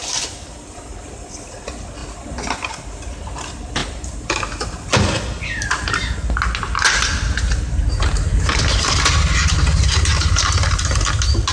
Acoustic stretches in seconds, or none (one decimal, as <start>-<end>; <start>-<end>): 0.0-11.5